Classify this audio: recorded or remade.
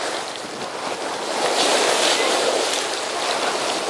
recorded